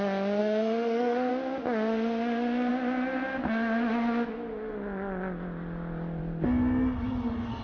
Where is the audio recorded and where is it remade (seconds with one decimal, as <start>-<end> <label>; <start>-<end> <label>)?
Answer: 0.0-0.4 recorded; 0.4-1.3 remade; 1.3-7.6 recorded